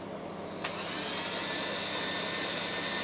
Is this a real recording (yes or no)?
yes